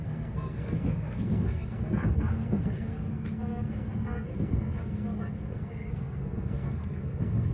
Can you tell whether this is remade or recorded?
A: remade